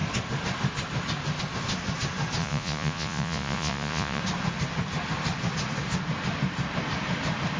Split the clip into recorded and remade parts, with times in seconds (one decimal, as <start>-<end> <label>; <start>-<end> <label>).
0.0-2.4 recorded; 2.4-4.2 remade; 4.2-7.6 recorded